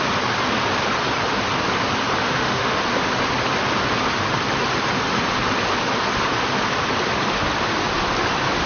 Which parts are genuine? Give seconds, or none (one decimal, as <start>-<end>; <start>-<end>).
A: 0.0-2.2; 2.8-8.7